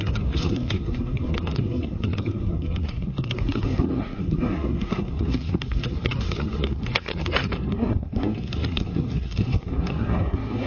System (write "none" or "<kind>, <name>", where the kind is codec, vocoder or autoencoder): codec, SNAC